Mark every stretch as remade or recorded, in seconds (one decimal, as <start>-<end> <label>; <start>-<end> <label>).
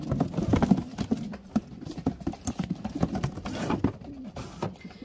0.0-5.0 recorded